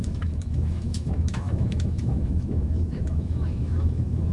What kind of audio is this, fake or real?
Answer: fake